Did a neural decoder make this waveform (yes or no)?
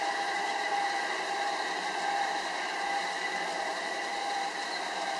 yes